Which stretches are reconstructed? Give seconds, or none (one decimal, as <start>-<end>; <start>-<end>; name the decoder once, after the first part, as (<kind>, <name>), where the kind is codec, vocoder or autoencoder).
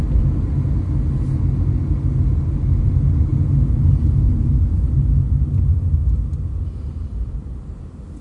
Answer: 3.3-4.5 (vocoder, Vocos)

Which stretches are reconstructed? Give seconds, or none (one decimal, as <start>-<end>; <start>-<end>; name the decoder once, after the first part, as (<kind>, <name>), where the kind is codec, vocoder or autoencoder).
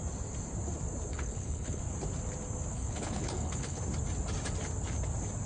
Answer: 1.1-1.8 (codec, HILCodec); 2.7-3.8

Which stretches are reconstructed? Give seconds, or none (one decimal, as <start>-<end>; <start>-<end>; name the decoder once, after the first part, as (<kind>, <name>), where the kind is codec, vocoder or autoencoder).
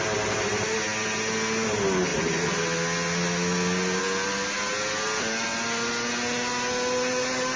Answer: none